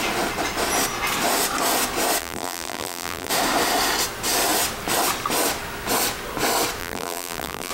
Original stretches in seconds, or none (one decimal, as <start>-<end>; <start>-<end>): 0.0-2.2; 3.3-6.8